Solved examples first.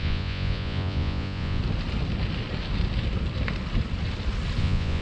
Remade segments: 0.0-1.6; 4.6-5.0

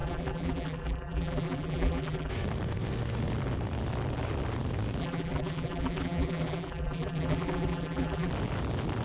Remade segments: 0.0-2.3; 5.0-8.3